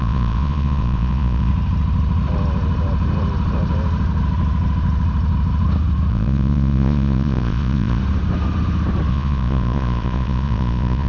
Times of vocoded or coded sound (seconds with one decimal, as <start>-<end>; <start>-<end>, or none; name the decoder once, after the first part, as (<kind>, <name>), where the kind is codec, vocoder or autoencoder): 0.0-1.5 (vocoder, Vocos); 6.1-8.0; 9.1-11.1